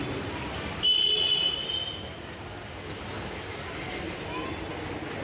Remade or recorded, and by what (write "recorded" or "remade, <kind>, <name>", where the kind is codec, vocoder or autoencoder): recorded